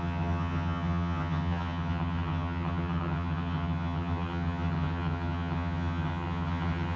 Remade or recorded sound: remade